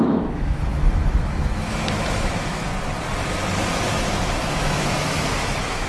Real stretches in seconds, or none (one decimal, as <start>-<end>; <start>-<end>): 2.7-3.7